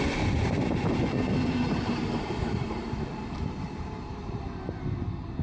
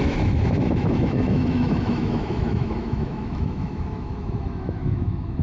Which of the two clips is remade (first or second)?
second